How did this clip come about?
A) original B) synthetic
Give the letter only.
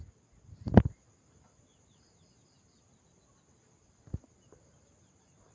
A